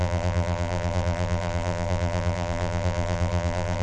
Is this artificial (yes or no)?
yes